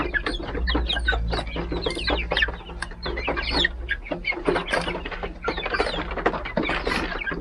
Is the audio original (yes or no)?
yes